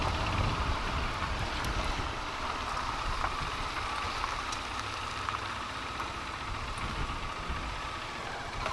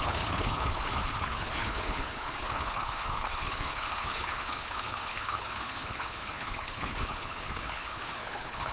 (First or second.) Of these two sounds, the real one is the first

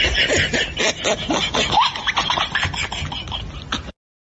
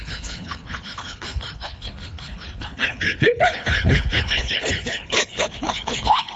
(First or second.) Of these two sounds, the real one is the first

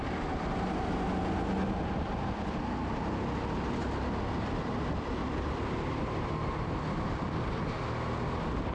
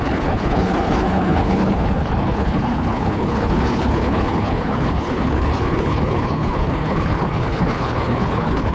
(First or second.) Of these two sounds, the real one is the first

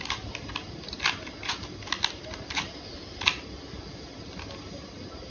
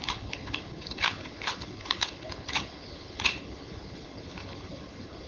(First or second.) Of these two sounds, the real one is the first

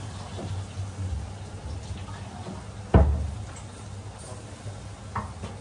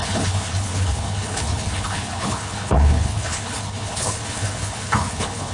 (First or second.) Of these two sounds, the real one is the first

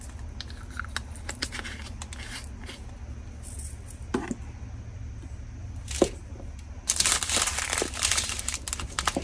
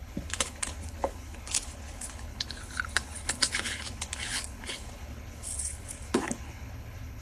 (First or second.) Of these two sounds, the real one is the first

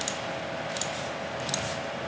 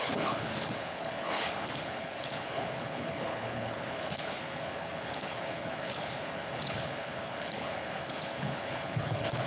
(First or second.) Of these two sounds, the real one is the first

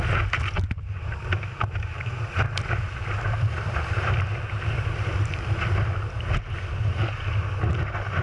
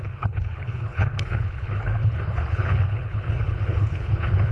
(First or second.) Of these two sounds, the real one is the first